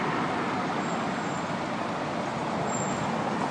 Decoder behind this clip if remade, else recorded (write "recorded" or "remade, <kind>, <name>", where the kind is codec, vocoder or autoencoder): recorded